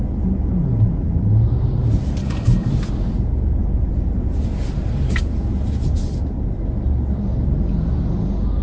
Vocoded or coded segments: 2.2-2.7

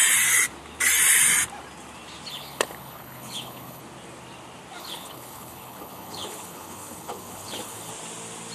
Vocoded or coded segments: 2.3-3.8; 4.8-7.9

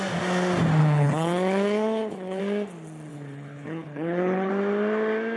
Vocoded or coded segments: 0.8-2.4; 3.1-4.5

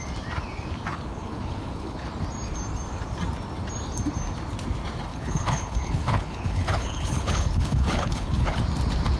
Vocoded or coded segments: 0.9-2.1; 5.1-8.6

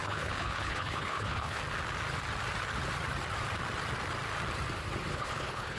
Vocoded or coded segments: 0.0-1.6; 5.1-5.8

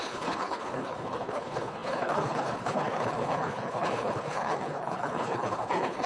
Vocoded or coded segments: 0.0-6.1

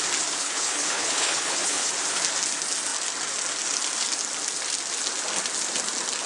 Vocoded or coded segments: 0.4-1.9